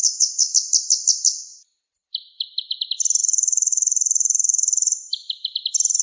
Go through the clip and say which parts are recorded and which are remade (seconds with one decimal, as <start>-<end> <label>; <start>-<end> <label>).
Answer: 0.0-0.5 remade; 0.5-6.0 recorded